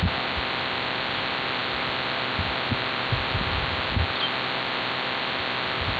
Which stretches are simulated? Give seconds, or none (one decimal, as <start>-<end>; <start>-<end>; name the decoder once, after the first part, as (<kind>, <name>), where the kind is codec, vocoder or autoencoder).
none

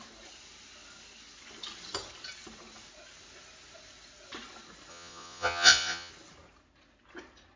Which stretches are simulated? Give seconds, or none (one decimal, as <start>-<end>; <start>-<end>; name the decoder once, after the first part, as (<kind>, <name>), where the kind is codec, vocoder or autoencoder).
4.9-6.1 (vocoder, Vocos)